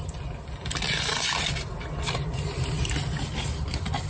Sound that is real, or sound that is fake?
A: real